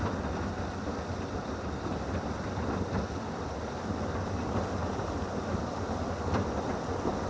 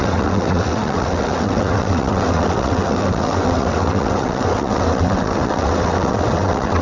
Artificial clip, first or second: second